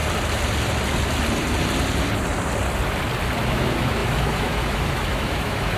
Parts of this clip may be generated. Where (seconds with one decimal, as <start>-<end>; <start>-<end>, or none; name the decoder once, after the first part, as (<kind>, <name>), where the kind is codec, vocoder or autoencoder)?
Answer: 3.5-5.8 (autoencoder, DAC-VAE)